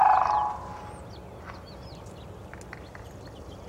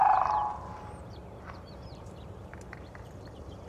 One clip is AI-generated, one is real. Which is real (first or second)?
first